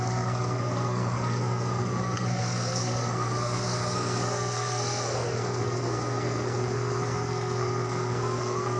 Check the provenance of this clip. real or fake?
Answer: fake